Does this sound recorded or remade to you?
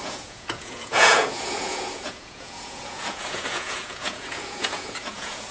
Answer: remade